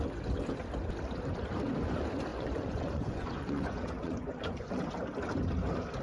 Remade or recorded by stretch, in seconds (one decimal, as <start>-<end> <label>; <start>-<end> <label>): 0.0-2.3 recorded; 2.3-4.7 remade; 4.7-6.0 recorded